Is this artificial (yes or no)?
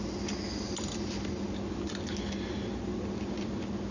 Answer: no